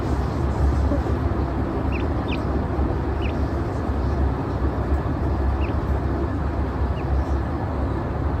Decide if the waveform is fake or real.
real